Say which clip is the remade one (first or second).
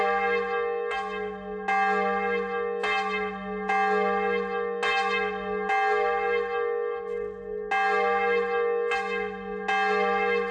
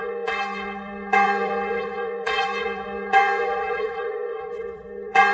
second